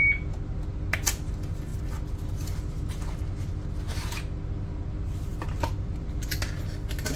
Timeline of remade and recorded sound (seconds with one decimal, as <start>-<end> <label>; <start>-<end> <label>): 0.0-5.3 recorded; 5.3-5.9 remade; 5.9-7.2 recorded